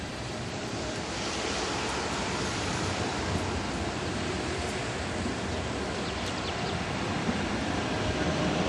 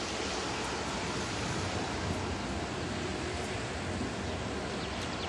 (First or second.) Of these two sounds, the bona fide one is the second